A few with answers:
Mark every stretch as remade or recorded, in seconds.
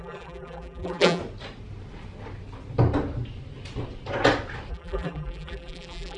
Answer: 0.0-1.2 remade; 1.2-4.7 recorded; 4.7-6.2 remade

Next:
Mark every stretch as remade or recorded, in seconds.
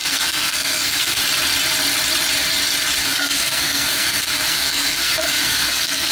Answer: 0.0-1.2 remade; 1.2-3.0 recorded; 3.0-6.1 remade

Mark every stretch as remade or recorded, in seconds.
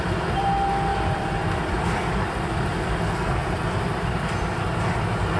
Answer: 0.0-0.9 recorded; 0.9-3.0 remade; 3.0-3.4 recorded; 3.4-4.3 remade; 4.3-5.4 recorded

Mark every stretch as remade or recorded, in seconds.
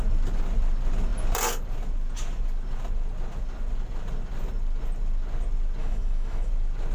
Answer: 0.0-5.8 recorded; 5.8-6.5 remade; 6.5-6.9 recorded